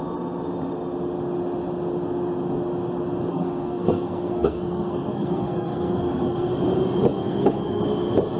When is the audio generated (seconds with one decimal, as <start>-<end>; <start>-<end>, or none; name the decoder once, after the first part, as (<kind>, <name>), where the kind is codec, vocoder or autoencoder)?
3.3-6.5 (codec, SNAC); 7.2-7.8